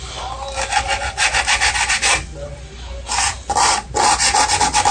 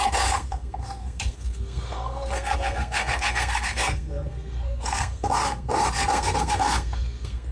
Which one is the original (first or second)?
first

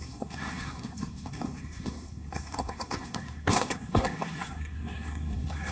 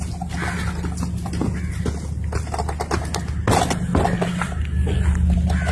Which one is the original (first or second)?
second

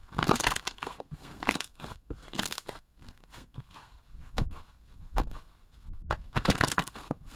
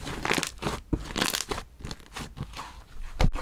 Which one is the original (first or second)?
second